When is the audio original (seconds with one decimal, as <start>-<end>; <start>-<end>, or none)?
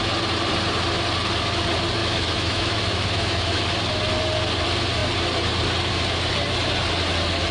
0.0-2.0; 3.6-7.5